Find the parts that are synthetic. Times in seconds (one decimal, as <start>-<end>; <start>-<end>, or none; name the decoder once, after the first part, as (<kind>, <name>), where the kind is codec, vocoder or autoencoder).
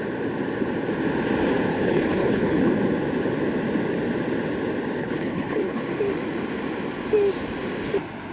1.7-2.7 (codec, HILCodec); 5.0-5.8